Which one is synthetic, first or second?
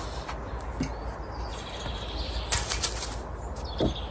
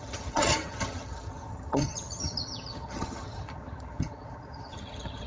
second